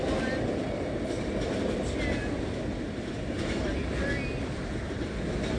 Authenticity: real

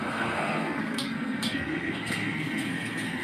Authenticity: fake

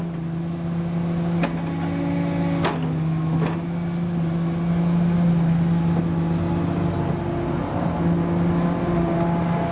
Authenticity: real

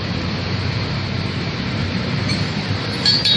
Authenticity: fake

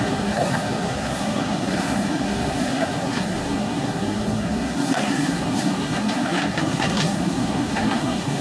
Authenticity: fake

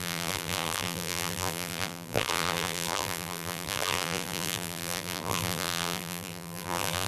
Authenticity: fake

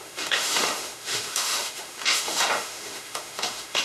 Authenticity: fake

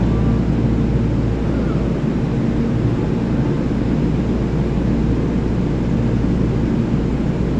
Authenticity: real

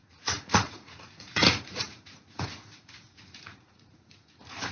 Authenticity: fake